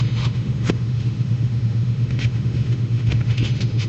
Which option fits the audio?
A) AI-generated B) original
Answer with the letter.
A